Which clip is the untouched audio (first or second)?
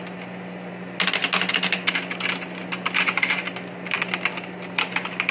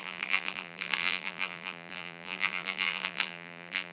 first